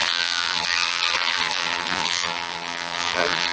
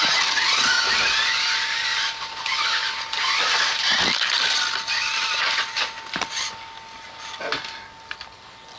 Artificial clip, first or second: first